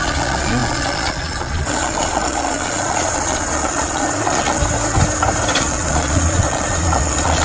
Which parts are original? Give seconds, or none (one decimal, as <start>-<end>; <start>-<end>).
4.6-5.6